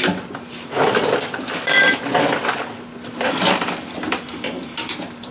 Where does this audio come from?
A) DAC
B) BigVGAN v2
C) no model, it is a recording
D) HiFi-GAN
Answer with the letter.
B